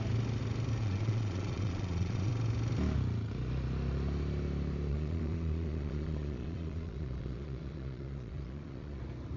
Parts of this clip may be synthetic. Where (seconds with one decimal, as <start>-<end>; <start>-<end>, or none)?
0.8-2.3; 4.9-9.0